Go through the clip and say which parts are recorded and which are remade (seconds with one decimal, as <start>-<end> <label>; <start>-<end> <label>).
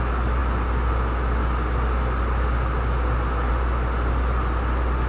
0.0-5.1 recorded